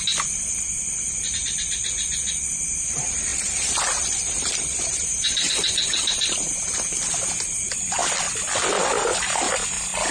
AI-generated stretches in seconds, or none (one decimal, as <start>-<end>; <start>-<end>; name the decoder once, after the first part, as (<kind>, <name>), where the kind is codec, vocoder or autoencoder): 3.3-6.9 (vocoder, BigVGAN v2); 8.0-8.8